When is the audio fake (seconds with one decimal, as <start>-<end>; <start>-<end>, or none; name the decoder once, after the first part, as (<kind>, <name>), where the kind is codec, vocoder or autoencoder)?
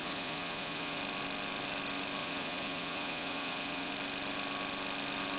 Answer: 0.0-1.0 (vocoder, Vocos); 2.2-3.9